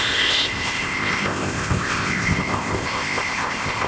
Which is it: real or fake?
fake